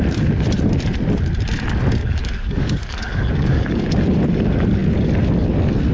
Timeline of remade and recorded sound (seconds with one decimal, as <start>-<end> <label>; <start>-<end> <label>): 0.0-2.0 recorded; 2.0-3.9 remade; 3.9-5.9 recorded